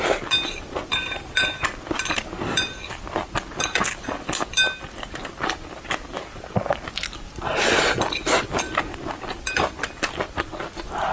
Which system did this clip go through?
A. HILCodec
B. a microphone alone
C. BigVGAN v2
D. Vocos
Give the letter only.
B